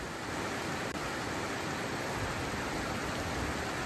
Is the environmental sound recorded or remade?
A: recorded